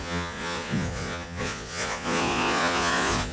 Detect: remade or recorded remade